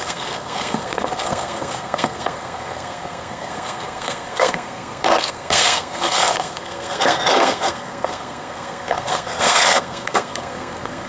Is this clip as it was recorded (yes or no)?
no